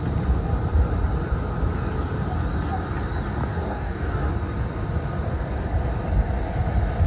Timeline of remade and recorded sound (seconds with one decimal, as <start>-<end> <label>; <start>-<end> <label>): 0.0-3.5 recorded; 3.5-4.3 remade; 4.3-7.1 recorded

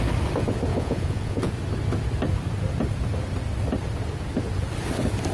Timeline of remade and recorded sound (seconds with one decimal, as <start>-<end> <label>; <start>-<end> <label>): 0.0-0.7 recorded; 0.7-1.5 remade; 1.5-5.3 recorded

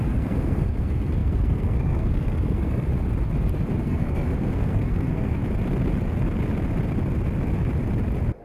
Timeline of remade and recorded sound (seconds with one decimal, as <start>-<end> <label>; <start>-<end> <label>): 0.0-2.9 remade; 2.9-3.8 recorded; 3.8-5.4 remade; 5.4-8.4 recorded

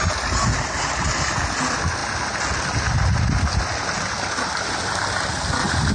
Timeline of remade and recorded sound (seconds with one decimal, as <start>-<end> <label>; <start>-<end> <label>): 0.0-5.9 recorded